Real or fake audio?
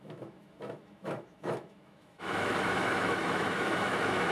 fake